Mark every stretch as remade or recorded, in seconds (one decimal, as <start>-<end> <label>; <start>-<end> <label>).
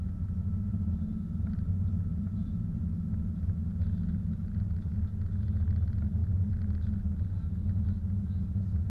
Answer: 0.0-0.7 recorded; 0.7-1.5 remade; 1.5-2.1 recorded; 2.1-3.7 remade; 3.7-6.2 recorded; 6.2-6.9 remade; 6.9-8.9 recorded